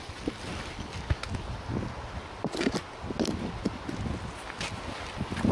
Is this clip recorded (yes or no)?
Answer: yes